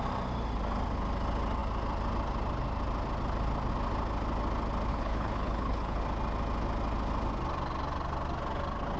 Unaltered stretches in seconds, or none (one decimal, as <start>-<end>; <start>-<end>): 0.0-4.9; 6.0-9.0